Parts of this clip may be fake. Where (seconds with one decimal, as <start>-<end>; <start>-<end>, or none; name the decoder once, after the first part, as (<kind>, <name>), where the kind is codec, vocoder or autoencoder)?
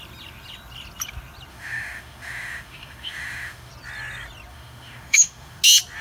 1.5-3.7 (autoencoder, DAC-VAE); 4.5-5.6